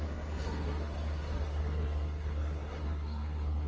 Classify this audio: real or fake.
fake